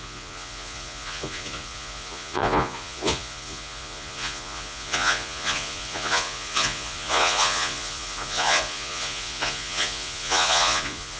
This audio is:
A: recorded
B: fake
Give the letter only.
B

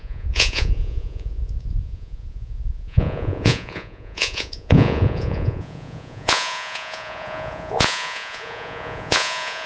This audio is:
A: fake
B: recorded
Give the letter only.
A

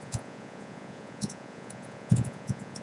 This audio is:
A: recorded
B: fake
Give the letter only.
B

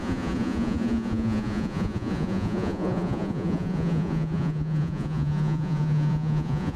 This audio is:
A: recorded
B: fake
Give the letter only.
B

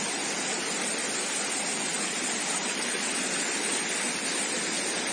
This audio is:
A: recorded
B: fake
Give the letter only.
A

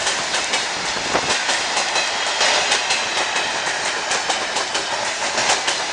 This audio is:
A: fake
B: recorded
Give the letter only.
B